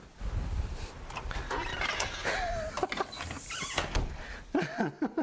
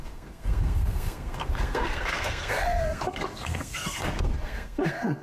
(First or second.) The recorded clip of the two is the first